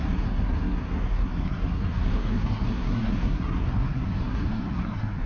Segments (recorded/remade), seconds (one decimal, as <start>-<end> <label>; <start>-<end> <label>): 0.0-5.3 remade

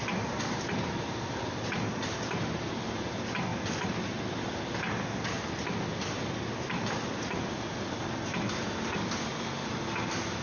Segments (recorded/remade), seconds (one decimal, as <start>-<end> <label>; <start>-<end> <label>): 0.0-10.4 recorded

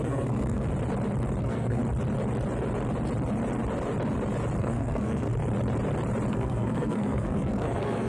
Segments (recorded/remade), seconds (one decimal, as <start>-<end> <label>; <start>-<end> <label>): 0.0-0.7 remade; 0.7-1.4 recorded; 1.4-1.8 remade; 1.8-4.6 recorded; 4.6-5.3 remade; 5.3-6.3 recorded; 6.3-8.1 remade